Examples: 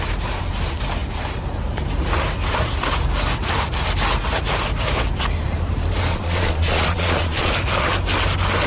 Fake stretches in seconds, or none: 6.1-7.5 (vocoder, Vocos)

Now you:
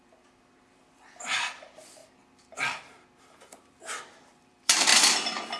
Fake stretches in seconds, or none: 0.0-2.0 (vocoder, BigVGAN v2); 4.1-5.6

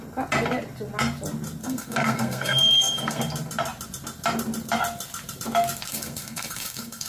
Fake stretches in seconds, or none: 1.6-3.2 (codec, SNAC); 5.9-7.1

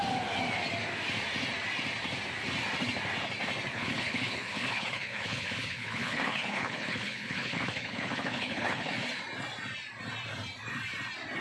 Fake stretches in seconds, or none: 3.7-8.9 (codec, HILCodec)

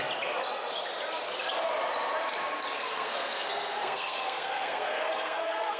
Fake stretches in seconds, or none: 2.8-5.8 (codec, SNAC)

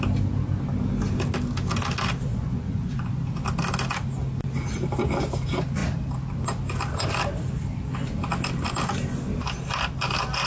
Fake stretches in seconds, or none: 2.3-3.1 (vocoder, Vocos)

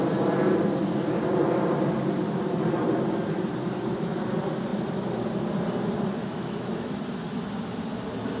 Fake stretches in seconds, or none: 6.2-6.9 (autoencoder, DAC-VAE)

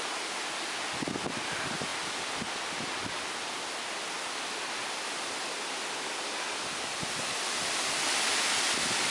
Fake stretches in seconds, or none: none